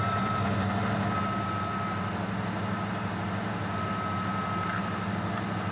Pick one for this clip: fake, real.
real